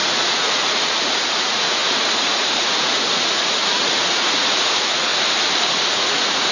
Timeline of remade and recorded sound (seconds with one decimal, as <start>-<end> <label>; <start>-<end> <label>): 0.0-5.1 remade; 5.1-5.9 recorded; 5.9-6.5 remade